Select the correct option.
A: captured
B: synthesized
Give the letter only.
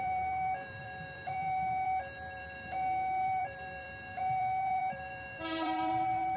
B